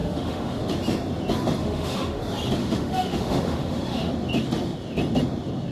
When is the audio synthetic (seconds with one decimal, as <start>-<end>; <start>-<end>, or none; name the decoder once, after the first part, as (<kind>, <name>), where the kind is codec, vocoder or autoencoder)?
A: 0.0-0.6 (autoencoder, DAC-VAE); 1.6-2.2; 2.6-4.1